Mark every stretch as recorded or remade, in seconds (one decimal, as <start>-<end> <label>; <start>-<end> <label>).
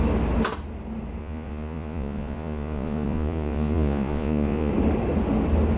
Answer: 0.0-1.2 recorded; 1.2-4.7 remade; 4.7-5.8 recorded